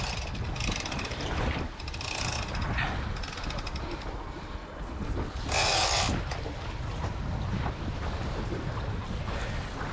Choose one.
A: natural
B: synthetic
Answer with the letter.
A